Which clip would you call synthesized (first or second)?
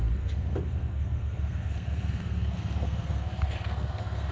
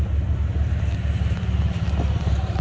first